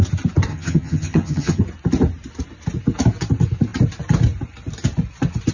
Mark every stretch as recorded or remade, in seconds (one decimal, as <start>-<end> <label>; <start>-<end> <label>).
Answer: 0.0-0.5 recorded; 0.5-1.6 remade; 1.6-5.5 recorded